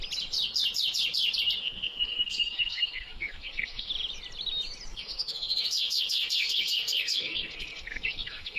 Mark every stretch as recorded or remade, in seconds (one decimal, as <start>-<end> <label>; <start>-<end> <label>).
0.0-1.6 recorded; 1.6-3.9 remade; 3.9-4.9 recorded; 4.9-8.6 remade